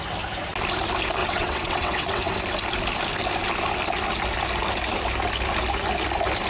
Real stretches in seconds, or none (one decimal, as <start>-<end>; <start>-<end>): 0.0-1.2; 2.3-6.5